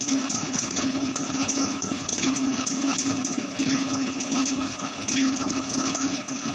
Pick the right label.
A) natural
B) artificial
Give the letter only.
B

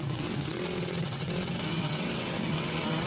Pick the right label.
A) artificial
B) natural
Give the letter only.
A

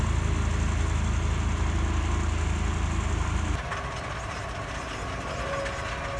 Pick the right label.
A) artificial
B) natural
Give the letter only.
B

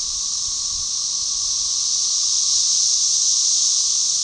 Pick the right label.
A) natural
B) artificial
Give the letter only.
A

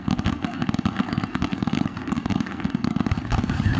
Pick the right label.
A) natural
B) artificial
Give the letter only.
B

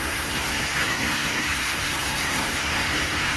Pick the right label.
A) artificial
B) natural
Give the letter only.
A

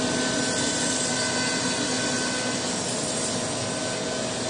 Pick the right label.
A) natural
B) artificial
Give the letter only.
A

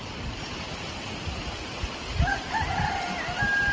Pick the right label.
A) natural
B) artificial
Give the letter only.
A